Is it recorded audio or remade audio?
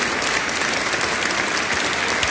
recorded